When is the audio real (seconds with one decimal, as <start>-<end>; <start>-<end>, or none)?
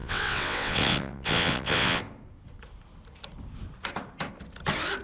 2.0-5.0